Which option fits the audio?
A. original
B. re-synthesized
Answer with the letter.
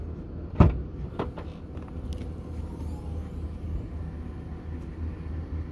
A